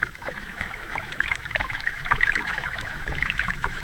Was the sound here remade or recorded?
remade